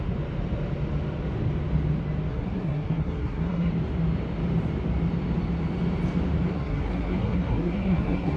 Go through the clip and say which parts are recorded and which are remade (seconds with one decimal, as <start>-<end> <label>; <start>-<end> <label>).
0.0-2.3 recorded; 2.3-3.7 remade; 3.7-6.5 recorded; 6.5-8.4 remade